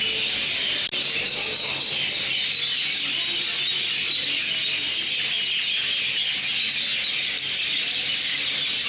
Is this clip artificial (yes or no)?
no